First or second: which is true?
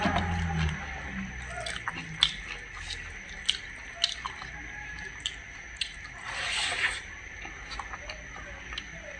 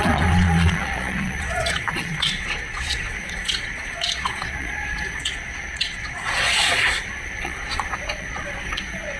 first